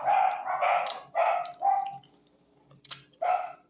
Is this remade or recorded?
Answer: recorded